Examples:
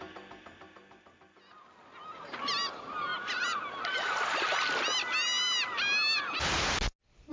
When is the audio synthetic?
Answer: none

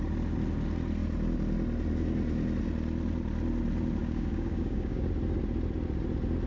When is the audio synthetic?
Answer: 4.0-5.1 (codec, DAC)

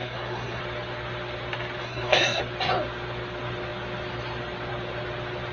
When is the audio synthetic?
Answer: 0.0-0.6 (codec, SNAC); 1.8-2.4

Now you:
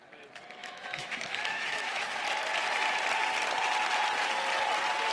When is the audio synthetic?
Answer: 0.6-2.2 (autoencoder, DAC-VAE)

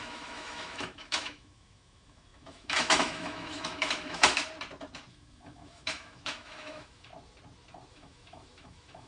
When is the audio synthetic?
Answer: 0.0-4.4 (autoencoder, DAC-VAE); 5.1-7.1; 7.9-9.1

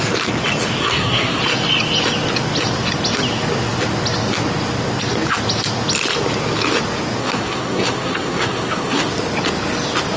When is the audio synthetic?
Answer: 0.8-1.4 (codec, SNAC); 7.2-9.1

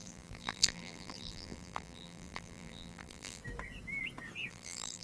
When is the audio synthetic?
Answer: 0.0-3.4 (vocoder, BigVGAN v2); 4.5-5.0

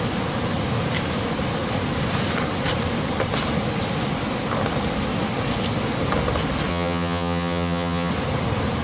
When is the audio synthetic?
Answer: 6.7-8.1 (vocoder, HiFi-GAN)